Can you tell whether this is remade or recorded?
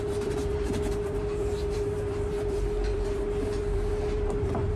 remade